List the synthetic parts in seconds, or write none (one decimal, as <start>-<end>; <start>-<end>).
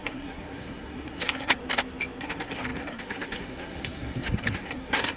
0.0-1.6; 2.2-5.2